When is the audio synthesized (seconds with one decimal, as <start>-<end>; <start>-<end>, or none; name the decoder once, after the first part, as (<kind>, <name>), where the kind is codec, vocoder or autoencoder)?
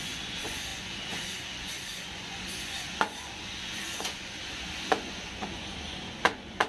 0.0-6.7 (vocoder, Vocos)